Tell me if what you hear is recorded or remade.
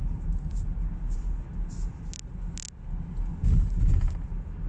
recorded